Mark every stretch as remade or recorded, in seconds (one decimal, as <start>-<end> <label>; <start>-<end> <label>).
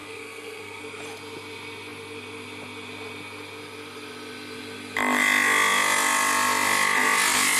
0.0-0.8 remade; 0.8-7.6 recorded